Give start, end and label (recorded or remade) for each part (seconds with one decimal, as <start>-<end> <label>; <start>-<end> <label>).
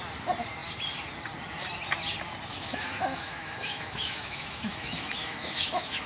0.0-2.5 recorded; 2.5-6.1 remade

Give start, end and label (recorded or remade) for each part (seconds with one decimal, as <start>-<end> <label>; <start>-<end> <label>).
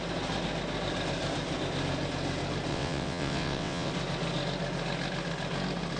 0.0-2.7 recorded; 2.7-3.9 remade; 3.9-6.0 recorded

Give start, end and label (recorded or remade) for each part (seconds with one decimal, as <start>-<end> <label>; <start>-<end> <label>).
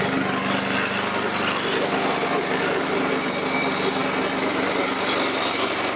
0.0-6.0 recorded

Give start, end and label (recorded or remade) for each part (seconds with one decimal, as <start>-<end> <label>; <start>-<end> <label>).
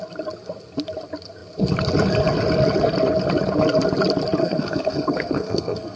0.0-4.4 recorded; 4.4-6.0 remade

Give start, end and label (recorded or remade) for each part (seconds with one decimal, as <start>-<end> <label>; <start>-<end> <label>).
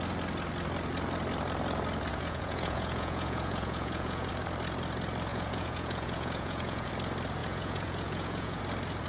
0.0-2.1 recorded; 2.1-4.3 remade; 4.3-5.3 recorded; 5.3-6.9 remade; 6.9-7.4 recorded; 7.4-8.6 remade; 8.6-9.1 recorded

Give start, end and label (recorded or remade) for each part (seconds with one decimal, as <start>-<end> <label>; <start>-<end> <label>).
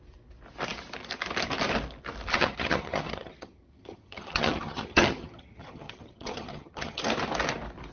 0.0-2.3 recorded; 2.3-7.0 remade; 7.0-7.9 recorded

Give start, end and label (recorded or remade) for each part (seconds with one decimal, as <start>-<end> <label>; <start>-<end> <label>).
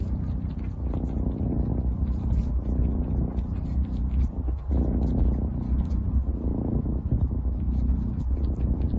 0.0-6.5 recorded; 6.5-8.2 remade; 8.2-9.0 recorded